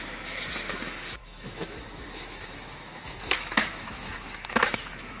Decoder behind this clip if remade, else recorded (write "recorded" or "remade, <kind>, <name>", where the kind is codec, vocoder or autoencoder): remade, autoencoder, DAC-VAE